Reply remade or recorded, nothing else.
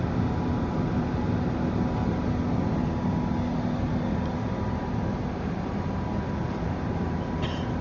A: recorded